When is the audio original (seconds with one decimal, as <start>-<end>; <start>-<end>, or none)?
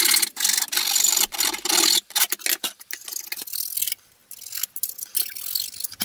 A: 0.0-6.0